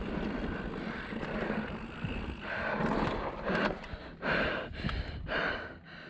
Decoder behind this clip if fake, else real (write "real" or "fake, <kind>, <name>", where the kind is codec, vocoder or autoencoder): real